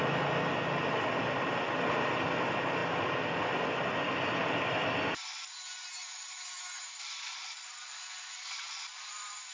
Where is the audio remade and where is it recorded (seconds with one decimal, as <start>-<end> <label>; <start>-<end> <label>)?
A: 0.0-9.5 recorded